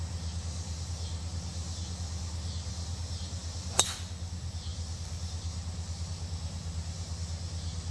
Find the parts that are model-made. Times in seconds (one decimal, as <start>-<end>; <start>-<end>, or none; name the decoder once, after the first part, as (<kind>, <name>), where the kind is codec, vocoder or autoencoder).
none